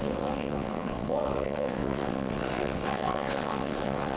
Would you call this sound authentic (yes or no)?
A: no